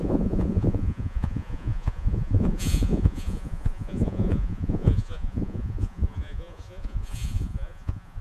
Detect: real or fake fake